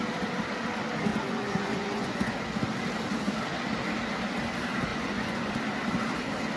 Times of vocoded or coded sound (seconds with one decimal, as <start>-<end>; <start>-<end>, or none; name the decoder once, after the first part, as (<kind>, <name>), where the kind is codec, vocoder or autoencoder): 1.1-2.3 (vocoder, Vocos); 4.9-5.5